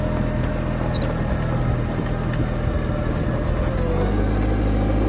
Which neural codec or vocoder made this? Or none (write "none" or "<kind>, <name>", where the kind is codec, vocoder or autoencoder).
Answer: none